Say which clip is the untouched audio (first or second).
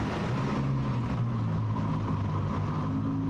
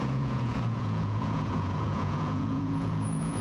first